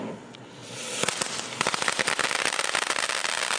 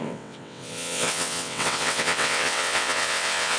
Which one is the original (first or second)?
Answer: first